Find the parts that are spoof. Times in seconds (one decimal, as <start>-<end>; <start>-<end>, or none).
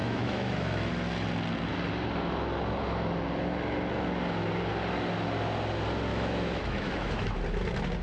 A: 0.0-0.9; 6.1-7.3